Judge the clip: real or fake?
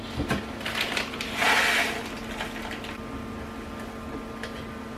real